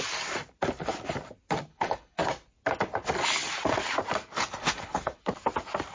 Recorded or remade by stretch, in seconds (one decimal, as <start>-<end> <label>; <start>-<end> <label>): 0.0-1.7 recorded; 1.7-2.2 remade; 2.2-4.6 recorded; 4.6-5.2 remade; 5.2-5.9 recorded